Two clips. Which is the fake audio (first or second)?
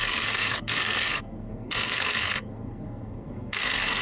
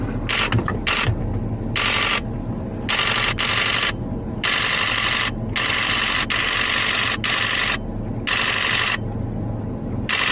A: first